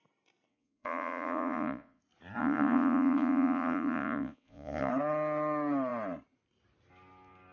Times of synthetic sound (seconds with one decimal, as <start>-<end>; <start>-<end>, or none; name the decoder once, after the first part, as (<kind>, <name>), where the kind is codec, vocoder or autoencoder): 0.5-2.0 (vocoder, Vocos); 2.4-4.9